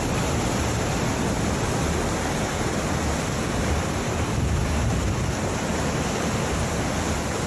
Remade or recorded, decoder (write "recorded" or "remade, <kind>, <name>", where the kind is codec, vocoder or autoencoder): recorded